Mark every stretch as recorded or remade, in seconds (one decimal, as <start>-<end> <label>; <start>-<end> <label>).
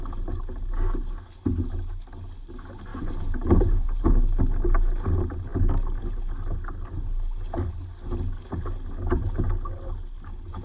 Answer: 0.0-2.9 recorded; 2.9-4.1 remade; 4.1-10.6 recorded